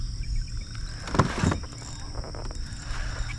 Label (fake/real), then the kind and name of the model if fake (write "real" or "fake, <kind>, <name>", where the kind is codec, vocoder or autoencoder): real